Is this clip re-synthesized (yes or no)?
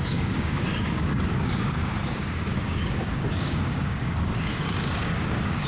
yes